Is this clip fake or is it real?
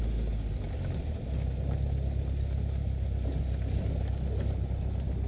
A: real